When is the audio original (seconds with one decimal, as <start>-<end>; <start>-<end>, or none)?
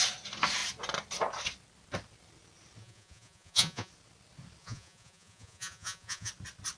0.0-2.8; 3.9-4.6; 6.3-6.8